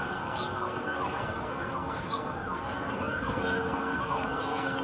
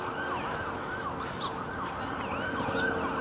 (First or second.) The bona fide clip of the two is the second